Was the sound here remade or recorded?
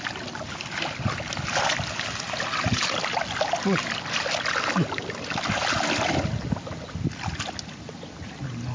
recorded